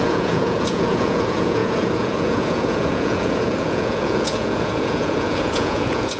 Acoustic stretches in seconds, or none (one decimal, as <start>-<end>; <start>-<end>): none